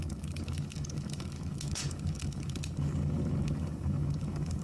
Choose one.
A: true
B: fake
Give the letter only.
B